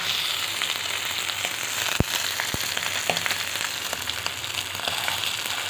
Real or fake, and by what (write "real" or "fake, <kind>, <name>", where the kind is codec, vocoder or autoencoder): real